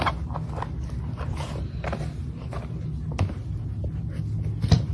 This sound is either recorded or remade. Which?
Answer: recorded